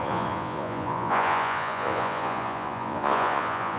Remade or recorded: remade